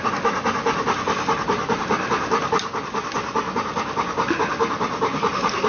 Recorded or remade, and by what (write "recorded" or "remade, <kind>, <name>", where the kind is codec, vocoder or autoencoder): recorded